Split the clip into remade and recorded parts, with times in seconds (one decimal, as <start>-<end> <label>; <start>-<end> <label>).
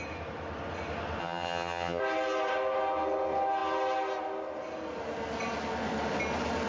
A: 0.0-1.2 recorded; 1.2-2.0 remade; 2.0-6.7 recorded